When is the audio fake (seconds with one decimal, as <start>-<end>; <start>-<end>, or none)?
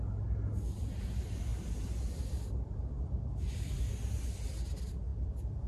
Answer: none